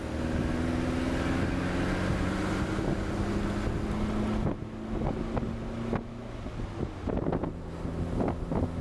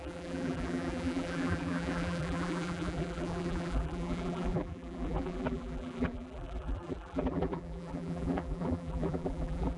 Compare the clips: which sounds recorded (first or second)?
first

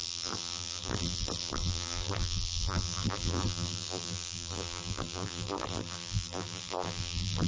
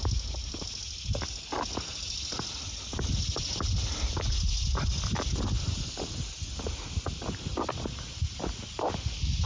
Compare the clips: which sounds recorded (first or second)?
second